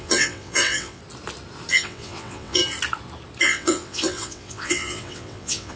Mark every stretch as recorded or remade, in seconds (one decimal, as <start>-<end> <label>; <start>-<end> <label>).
0.0-1.0 remade; 1.0-1.7 recorded; 1.7-2.6 remade; 2.6-3.4 recorded; 3.4-5.8 remade